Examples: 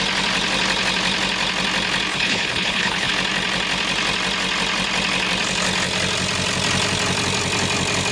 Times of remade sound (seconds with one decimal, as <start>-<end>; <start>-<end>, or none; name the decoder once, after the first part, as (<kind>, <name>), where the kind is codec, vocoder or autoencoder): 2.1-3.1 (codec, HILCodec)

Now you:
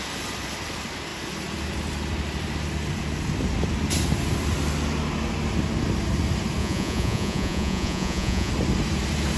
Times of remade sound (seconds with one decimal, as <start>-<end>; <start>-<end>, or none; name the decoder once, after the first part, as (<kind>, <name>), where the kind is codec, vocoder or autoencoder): 6.6-8.5 (vocoder, Vocos)

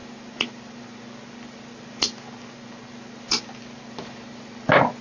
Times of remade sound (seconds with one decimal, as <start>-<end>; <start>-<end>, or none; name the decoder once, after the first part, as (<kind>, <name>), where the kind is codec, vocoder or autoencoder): none